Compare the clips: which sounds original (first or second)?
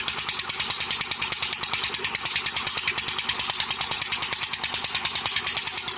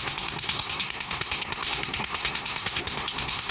first